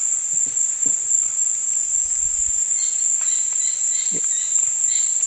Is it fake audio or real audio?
real